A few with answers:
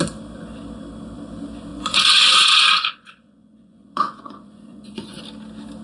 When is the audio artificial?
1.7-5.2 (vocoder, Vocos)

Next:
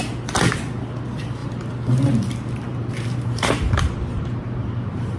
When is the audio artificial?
1.4-2.1 (vocoder, BigVGAN v2); 2.7-5.2